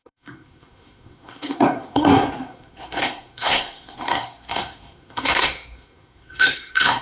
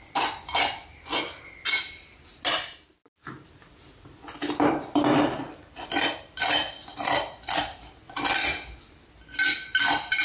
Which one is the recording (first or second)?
second